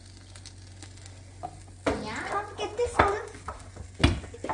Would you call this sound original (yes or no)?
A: yes